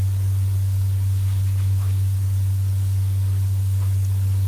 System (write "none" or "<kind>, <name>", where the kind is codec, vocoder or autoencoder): codec, DAC